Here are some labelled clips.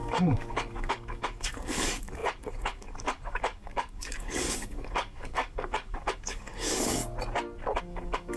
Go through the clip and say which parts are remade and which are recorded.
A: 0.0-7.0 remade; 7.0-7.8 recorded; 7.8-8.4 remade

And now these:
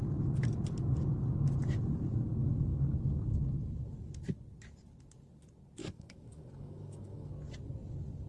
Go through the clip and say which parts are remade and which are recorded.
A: 0.0-5.8 recorded; 5.8-7.3 remade; 7.3-8.3 recorded

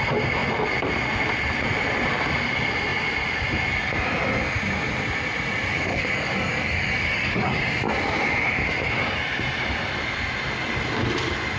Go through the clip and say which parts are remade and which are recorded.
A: 0.0-5.7 recorded; 5.7-7.6 remade; 7.6-11.6 recorded